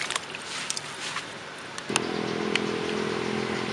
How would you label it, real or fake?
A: real